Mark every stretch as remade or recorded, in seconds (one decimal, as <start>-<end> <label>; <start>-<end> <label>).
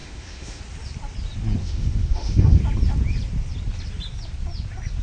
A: 0.0-0.6 remade; 0.6-1.6 recorded; 1.6-2.6 remade; 2.6-5.0 recorded